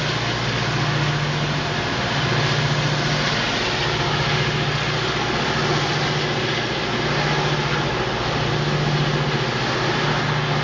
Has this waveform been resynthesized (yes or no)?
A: no